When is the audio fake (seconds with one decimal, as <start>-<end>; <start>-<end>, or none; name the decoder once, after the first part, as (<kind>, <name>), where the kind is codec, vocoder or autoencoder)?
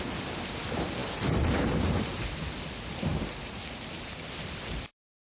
0.0-3.1 (vocoder, BigVGAN v2); 3.9-5.2